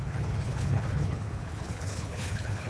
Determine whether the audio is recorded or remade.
remade